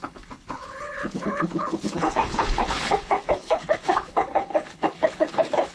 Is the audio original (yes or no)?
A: no